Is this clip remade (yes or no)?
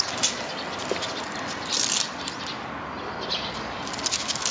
no